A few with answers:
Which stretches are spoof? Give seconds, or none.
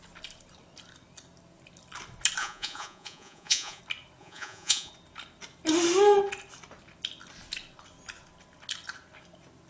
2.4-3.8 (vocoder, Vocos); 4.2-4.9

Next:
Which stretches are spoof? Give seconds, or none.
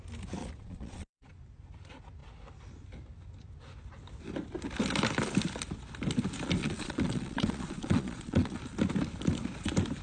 0.4-1.3 (vocoder, Vocos); 6.6-8.6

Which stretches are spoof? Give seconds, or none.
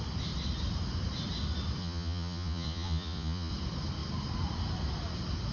1.8-3.5 (vocoder, Vocos)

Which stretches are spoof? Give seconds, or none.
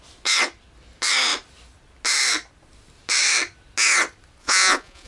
4.4-5.1 (vocoder, Vocos)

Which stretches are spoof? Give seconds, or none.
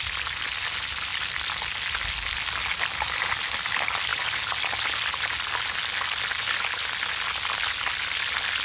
none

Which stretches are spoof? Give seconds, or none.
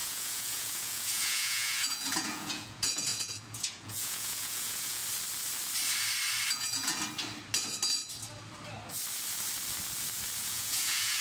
0.0-5.0 (vocoder, Vocos); 6.5-7.0; 10.4-11.2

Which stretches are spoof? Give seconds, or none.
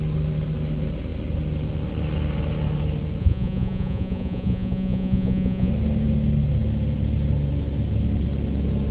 3.2-5.7 (vocoder, Vocos)